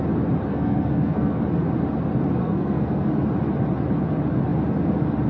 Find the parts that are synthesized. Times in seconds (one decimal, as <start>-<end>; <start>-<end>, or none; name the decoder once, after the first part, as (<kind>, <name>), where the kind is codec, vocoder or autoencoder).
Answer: 0.5-1.4 (codec, SNAC); 2.4-3.1